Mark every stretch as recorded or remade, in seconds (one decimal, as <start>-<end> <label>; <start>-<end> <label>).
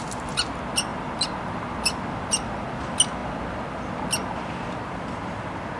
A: 0.0-5.8 recorded